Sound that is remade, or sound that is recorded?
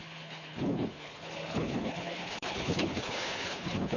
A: remade